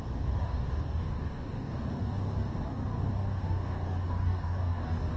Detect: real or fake fake